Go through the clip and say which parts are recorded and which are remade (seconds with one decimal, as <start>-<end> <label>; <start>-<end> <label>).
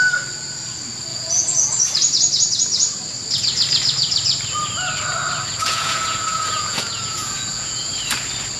0.0-1.1 recorded; 1.1-1.8 remade; 1.8-5.6 recorded; 5.6-7.9 remade; 7.9-8.6 recorded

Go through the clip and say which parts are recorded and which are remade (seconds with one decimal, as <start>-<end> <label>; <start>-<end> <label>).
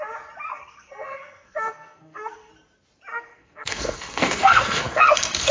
0.0-0.5 recorded; 0.5-2.5 remade; 2.5-3.1 recorded; 3.1-5.5 remade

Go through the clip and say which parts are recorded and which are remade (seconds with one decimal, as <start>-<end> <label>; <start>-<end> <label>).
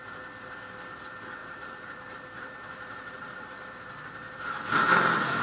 0.0-1.4 recorded; 1.4-4.4 remade; 4.4-5.4 recorded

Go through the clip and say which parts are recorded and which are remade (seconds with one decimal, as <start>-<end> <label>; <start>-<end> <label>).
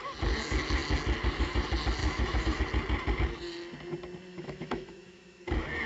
0.0-2.0 recorded; 2.0-2.6 remade; 2.6-4.3 recorded; 4.3-5.9 remade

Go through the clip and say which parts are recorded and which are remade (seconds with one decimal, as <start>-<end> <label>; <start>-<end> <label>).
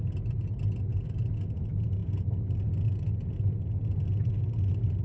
0.0-5.0 recorded